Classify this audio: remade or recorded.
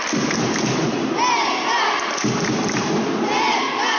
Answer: recorded